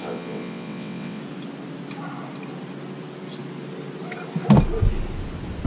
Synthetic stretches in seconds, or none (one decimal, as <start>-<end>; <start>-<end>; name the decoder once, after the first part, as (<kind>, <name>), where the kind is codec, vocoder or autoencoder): 0.0-1.2 (vocoder, WaveNeXt)